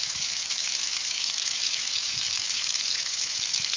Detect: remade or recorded remade